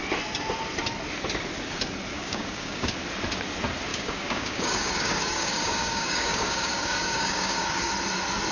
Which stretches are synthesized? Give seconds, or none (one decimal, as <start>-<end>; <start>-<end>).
2.1-2.9; 3.9-7.9